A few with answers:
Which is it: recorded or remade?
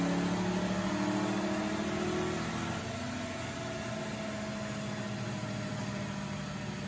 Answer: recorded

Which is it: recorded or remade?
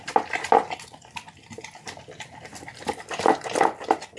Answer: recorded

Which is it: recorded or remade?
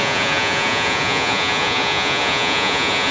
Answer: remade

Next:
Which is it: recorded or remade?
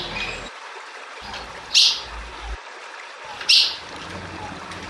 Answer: recorded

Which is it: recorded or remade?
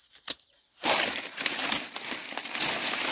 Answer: recorded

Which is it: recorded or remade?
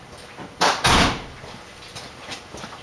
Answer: recorded